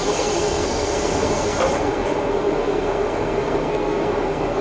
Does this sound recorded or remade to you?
remade